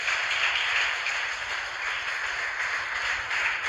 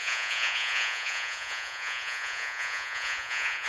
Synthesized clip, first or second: second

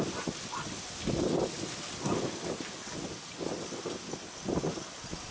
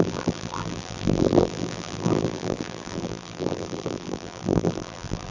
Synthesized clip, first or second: second